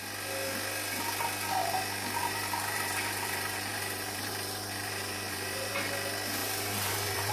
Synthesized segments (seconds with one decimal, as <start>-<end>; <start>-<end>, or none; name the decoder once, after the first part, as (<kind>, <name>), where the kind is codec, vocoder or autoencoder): 2.2-5.7 (vocoder, BigVGAN v2); 6.4-7.3